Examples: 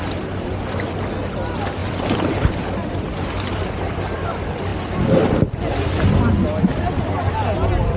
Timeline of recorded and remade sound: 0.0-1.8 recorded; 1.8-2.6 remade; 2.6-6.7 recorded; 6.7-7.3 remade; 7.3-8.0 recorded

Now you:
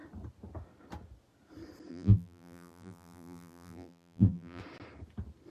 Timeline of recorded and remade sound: 0.0-1.9 recorded; 1.9-4.6 remade; 4.6-5.5 recorded

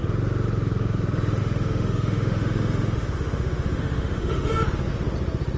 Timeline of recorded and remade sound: 0.0-1.4 recorded; 1.4-4.5 remade; 4.5-5.6 recorded

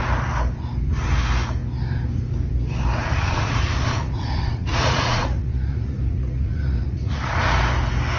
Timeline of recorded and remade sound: 0.0-3.0 recorded; 3.0-7.2 remade; 7.2-8.2 recorded

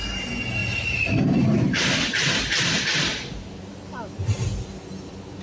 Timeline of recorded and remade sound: 0.0-0.6 recorded; 0.6-3.8 remade; 3.8-5.4 recorded